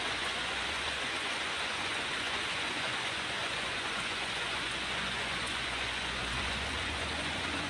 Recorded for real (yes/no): no